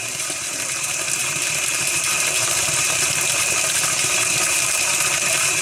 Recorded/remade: remade